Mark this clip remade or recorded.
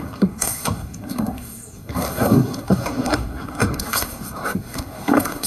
remade